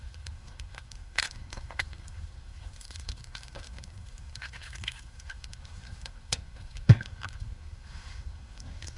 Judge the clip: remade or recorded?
remade